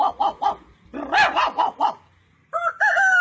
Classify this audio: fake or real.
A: real